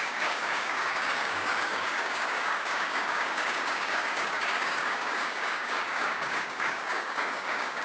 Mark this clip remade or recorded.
remade